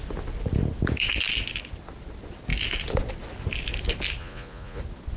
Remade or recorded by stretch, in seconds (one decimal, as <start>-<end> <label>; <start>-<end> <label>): 0.0-4.2 recorded; 4.2-4.8 remade; 4.8-5.2 recorded